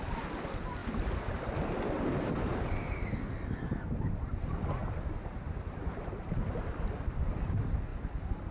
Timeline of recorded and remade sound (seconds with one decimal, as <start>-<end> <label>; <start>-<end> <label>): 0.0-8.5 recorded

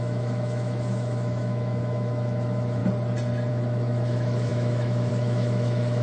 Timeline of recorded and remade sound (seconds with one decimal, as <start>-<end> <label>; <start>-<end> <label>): 0.0-2.8 remade; 2.8-3.5 recorded; 3.5-6.0 remade

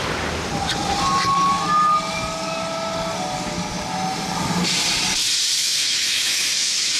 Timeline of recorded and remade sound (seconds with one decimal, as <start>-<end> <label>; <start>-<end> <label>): 0.0-5.6 recorded; 5.6-7.0 remade

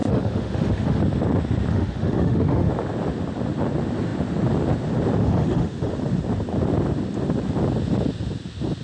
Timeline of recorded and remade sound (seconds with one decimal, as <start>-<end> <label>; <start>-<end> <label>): 0.0-1.0 remade; 1.0-1.7 recorded; 1.7-2.7 remade; 2.7-5.2 recorded; 5.2-5.9 remade; 5.9-8.8 recorded

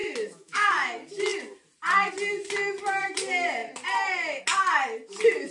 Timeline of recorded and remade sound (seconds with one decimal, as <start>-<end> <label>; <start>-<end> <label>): 0.0-0.7 remade; 0.7-5.5 recorded

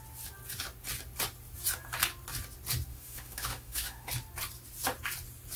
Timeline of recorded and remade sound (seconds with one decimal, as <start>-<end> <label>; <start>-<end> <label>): 0.0-2.9 recorded; 2.9-4.1 remade; 4.1-5.6 recorded

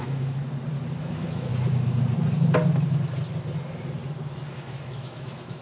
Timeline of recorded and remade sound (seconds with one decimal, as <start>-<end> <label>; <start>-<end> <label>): 0.0-0.4 remade; 0.4-1.0 recorded; 1.0-1.5 remade; 1.5-4.5 recorded; 4.5-5.6 remade